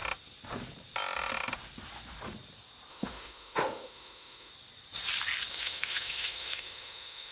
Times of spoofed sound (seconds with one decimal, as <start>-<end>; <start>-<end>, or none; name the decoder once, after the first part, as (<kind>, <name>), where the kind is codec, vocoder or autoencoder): 2.9-4.5 (autoencoder, DAC-VAE); 5.5-7.3